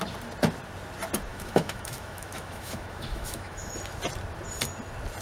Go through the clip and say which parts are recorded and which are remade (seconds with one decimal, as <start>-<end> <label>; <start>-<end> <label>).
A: 0.0-1.3 recorded; 1.3-3.7 remade; 3.7-5.2 recorded